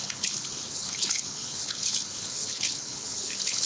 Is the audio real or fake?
fake